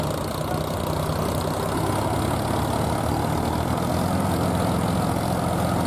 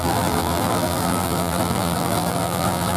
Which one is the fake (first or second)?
second